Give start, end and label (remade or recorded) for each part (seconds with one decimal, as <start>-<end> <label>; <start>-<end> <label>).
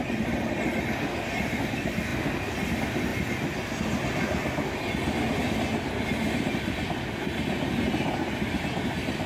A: 0.0-9.3 recorded